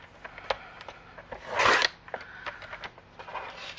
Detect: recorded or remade recorded